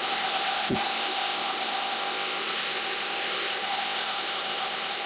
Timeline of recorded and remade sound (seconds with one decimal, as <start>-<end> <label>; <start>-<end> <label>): 0.0-5.1 remade

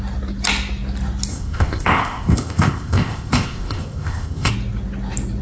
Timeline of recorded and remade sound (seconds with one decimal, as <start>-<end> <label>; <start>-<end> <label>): 0.0-1.3 recorded; 1.3-4.5 remade; 4.5-5.4 recorded